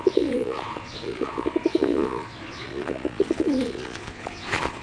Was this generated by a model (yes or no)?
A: yes